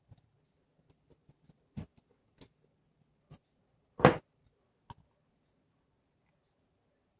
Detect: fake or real real